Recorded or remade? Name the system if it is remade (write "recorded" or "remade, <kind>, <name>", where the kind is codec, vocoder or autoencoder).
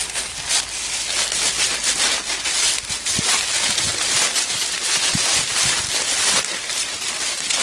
recorded